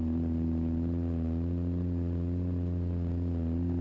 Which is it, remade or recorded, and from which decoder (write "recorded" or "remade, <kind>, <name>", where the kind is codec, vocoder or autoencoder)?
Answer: recorded